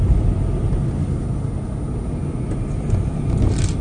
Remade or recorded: recorded